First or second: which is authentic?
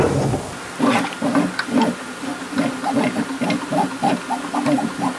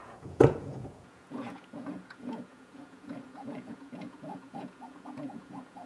first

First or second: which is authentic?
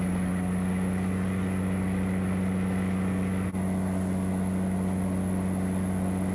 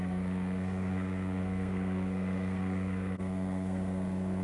first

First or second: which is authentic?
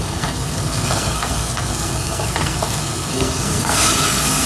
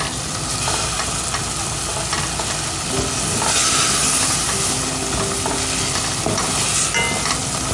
second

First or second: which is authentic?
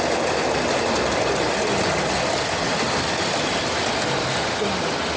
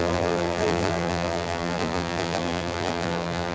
first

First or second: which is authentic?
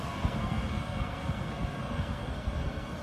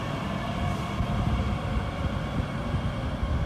second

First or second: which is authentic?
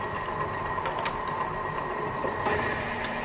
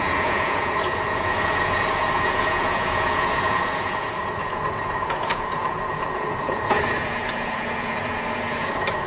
first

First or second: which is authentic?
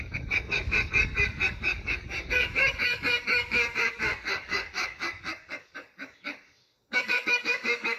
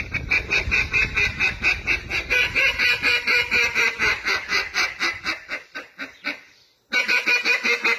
second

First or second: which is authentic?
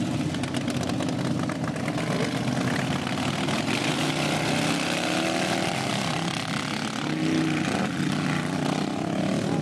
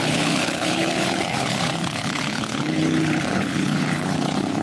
first